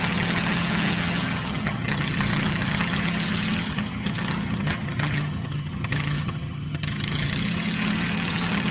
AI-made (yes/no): yes